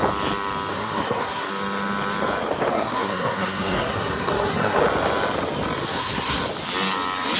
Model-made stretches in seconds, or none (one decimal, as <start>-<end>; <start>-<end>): 0.7-1.5; 2.7-4.8; 5.8-6.4